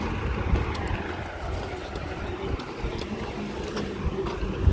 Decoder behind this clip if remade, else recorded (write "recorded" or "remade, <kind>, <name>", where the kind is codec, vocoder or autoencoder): recorded